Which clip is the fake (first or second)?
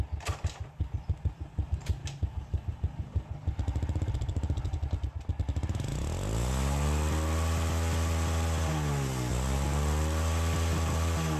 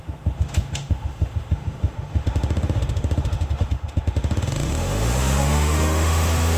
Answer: second